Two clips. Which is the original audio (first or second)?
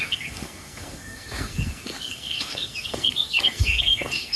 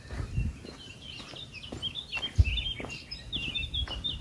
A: second